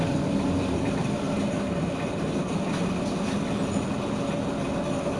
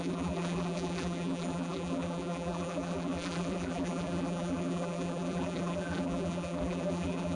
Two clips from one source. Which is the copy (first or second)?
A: second